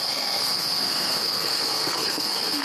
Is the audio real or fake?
fake